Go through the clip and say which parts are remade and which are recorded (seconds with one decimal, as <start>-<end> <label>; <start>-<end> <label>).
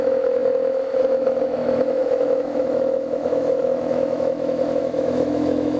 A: 0.0-5.8 remade